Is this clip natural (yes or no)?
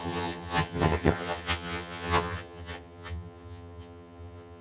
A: no